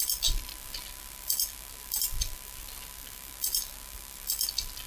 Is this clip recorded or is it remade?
remade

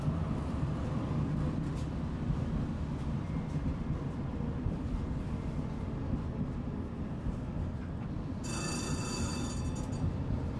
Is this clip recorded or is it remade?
recorded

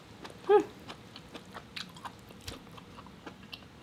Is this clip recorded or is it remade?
recorded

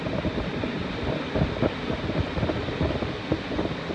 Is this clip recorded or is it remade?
recorded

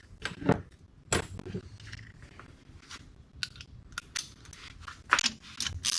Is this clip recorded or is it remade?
recorded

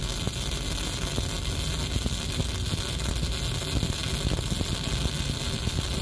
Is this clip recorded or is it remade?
recorded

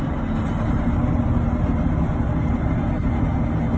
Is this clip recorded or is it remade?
recorded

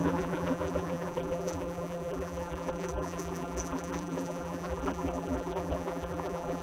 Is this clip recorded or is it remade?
remade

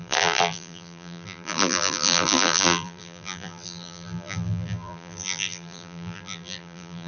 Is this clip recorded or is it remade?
remade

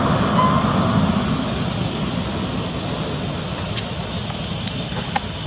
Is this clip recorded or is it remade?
recorded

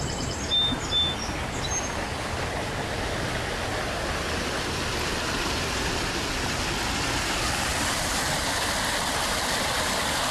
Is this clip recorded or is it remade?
recorded